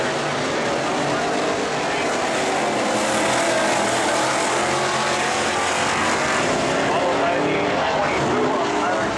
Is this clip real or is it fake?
real